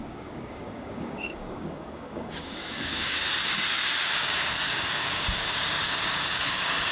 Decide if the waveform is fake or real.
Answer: fake